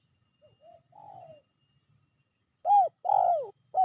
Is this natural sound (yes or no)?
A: yes